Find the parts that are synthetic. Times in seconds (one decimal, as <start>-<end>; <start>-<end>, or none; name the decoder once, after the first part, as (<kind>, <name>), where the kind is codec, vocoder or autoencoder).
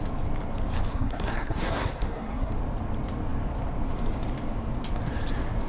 0.9-2.5 (codec, SNAC)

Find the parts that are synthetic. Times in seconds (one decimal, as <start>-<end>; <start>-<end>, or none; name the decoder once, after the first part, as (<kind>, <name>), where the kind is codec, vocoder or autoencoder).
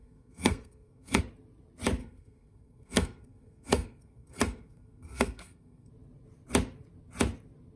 0.0-1.2 (codec, SNAC); 2.0-5.9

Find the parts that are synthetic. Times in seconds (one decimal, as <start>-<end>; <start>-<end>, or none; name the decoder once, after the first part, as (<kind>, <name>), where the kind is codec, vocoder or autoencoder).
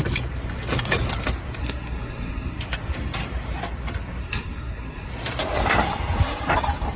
1.6-2.6 (codec, SNAC); 4.2-5.1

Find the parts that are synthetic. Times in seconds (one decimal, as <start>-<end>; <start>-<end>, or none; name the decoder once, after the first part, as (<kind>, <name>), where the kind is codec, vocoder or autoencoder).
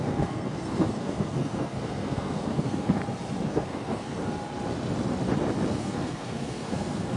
0.0-3.0 (codec, SNAC); 3.5-4.2; 5.7-7.2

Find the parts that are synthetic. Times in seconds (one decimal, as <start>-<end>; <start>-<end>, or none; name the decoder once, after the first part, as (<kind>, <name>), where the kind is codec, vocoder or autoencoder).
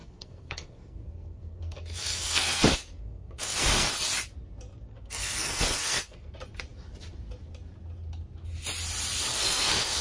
0.0-3.9 (codec, SNAC); 4.9-6.3; 9.3-10.0